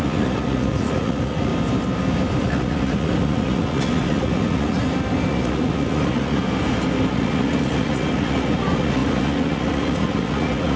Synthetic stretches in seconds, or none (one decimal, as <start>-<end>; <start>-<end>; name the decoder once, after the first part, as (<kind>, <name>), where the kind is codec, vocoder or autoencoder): 0.0-1.5 (vocoder, Vocos); 2.4-4.8; 5.3-6.4; 7.1-10.8